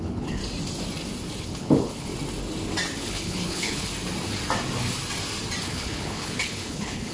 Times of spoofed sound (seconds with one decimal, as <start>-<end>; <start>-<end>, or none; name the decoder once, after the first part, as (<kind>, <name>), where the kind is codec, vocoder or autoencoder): 0.0-0.4 (codec, HILCodec); 1.4-2.1; 3.0-3.9; 5.6-7.1